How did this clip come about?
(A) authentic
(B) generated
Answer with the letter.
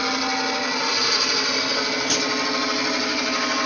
A